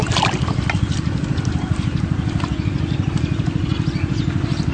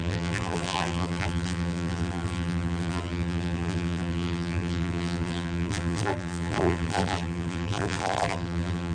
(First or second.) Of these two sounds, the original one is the first